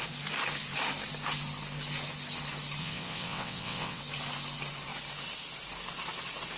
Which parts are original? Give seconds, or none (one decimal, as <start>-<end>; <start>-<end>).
0.0-2.8; 4.0-6.6

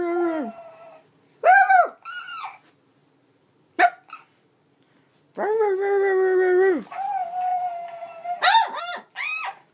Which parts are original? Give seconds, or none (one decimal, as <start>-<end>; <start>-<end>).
0.0-9.7

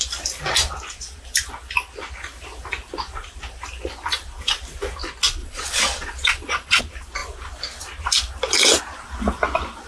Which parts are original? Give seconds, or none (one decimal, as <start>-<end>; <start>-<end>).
0.0-5.4; 6.8-9.9

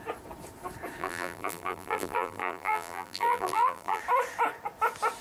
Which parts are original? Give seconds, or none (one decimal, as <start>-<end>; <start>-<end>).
0.0-1.0; 4.0-5.2

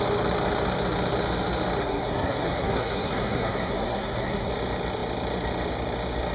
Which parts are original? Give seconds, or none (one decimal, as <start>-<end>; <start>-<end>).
0.0-1.8; 4.5-6.3